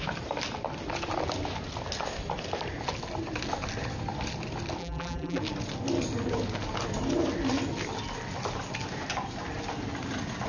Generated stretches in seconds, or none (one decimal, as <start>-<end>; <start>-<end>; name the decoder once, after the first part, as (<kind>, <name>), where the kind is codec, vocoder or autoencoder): 4.8-5.4 (vocoder, BigVGAN v2)